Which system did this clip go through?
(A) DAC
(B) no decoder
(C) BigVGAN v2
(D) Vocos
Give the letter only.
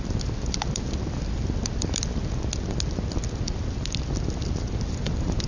B